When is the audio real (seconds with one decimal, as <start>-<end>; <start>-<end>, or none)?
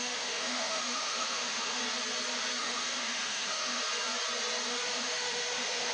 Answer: 1.8-2.6; 3.8-4.7